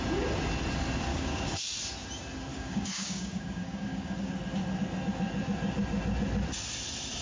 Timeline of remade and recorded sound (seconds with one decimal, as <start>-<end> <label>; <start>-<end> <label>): 0.0-1.1 recorded; 1.1-1.6 remade; 1.6-2.5 recorded; 2.5-4.3 remade; 4.3-7.2 recorded